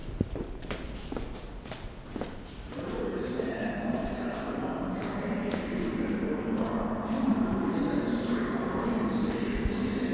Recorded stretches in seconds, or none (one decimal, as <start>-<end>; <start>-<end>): 4.6-7.3; 7.8-10.1